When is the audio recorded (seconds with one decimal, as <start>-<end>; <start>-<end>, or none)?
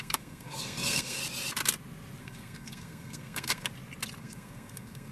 1.2-2.2; 3.7-4.2